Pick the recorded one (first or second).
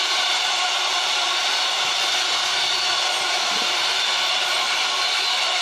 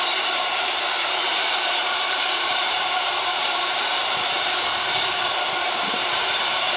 first